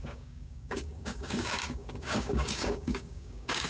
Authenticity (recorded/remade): remade